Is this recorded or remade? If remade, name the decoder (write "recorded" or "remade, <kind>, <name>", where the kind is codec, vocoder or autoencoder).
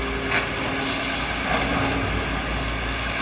recorded